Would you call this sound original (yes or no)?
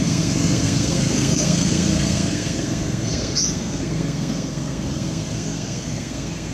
no